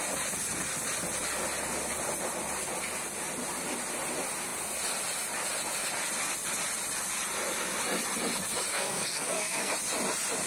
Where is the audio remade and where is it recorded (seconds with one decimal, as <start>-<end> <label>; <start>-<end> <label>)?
0.0-8.7 recorded; 8.7-9.7 remade; 9.7-10.5 recorded